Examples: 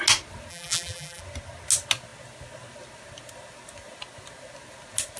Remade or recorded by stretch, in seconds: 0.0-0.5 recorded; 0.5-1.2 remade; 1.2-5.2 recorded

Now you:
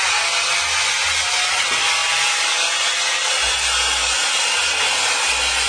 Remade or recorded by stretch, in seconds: 0.0-5.7 recorded